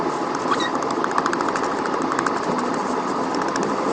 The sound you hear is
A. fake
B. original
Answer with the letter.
B